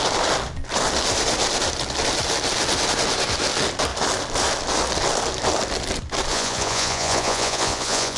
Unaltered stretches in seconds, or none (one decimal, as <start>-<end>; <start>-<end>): 0.0-6.3